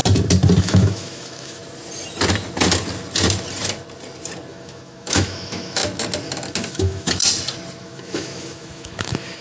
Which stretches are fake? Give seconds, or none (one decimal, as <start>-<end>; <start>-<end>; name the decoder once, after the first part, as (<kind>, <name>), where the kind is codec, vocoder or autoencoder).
0.6-1.6 (autoencoder, DAC-VAE); 4.5-5.8; 6.7-7.2; 7.8-9.4